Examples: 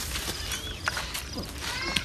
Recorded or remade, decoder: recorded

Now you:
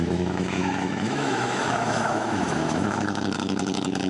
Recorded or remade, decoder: remade, autoencoder, DAC-VAE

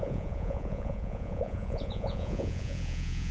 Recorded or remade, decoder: remade, vocoder, Vocos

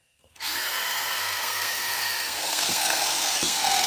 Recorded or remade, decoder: remade, codec, SNAC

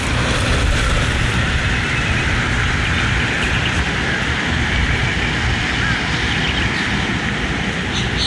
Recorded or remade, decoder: recorded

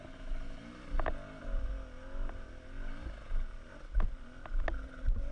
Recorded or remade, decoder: recorded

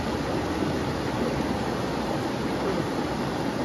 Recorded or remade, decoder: recorded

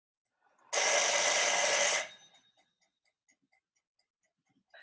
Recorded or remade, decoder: recorded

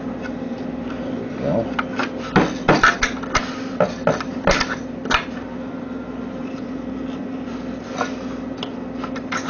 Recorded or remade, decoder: recorded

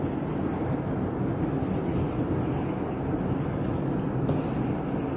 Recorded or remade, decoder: recorded